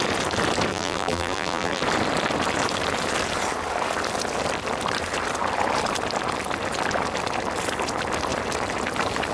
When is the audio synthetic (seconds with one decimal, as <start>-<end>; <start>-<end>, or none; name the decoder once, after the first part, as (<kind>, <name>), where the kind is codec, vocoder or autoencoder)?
0.7-1.8 (vocoder, BigVGAN v2)

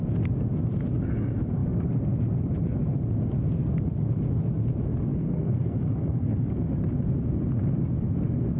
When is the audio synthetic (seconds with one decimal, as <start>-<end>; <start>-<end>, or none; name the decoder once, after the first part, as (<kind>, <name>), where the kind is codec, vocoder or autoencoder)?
5.1-6.5 (codec, SNAC)